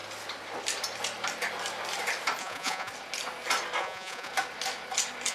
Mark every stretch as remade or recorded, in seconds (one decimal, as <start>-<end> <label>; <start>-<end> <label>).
0.0-2.4 recorded; 2.4-2.9 remade; 2.9-3.8 recorded; 3.8-4.3 remade; 4.3-5.3 recorded